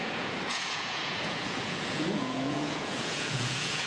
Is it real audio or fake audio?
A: fake